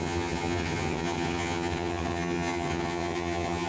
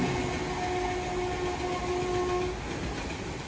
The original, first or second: second